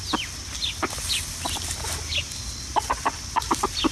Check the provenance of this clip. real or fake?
real